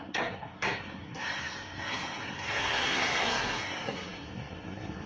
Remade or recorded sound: remade